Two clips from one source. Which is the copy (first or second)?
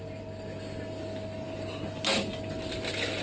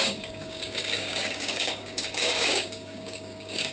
second